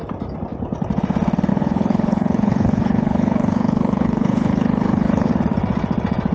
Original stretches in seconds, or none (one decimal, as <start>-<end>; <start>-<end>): 0.0-1.5; 5.3-6.3